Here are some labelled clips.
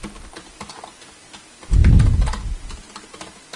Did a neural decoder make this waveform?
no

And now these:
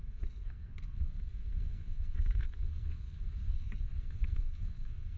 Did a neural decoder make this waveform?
yes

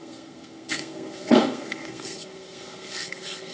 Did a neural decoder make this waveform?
yes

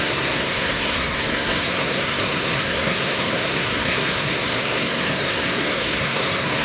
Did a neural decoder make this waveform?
yes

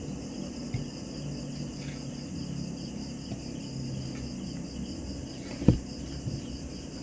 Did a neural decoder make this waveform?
no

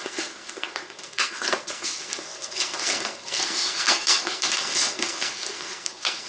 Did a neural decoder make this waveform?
yes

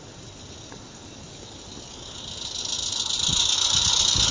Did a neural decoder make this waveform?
no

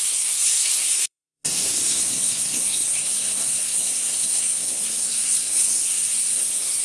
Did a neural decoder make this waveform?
yes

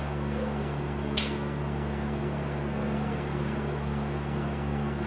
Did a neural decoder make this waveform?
yes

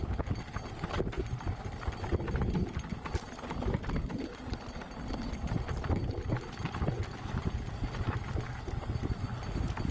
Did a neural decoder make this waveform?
no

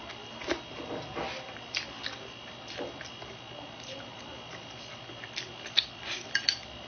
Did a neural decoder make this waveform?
no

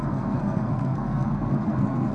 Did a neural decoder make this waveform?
yes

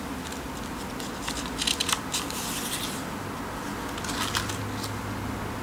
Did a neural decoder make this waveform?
no